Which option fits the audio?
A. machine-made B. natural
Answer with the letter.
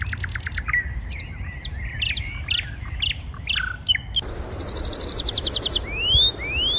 B